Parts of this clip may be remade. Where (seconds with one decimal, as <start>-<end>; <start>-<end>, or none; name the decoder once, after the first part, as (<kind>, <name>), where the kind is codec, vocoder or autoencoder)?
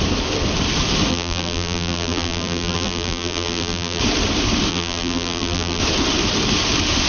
1.1-4.0 (vocoder, BigVGAN v2); 4.7-5.8